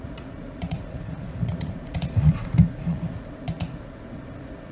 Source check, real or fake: fake